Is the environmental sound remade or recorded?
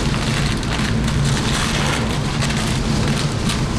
recorded